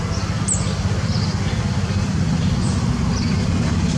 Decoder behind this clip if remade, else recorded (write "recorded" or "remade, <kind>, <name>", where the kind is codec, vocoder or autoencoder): recorded